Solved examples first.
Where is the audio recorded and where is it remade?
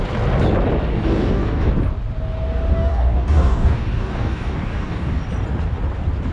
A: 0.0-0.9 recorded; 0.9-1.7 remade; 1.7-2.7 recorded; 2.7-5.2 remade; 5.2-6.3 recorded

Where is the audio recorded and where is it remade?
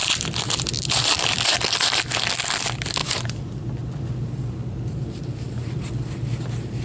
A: 0.0-2.0 remade; 2.0-3.0 recorded; 3.0-5.8 remade; 5.8-6.8 recorded